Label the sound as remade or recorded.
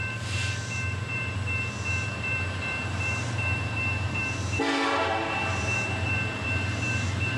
remade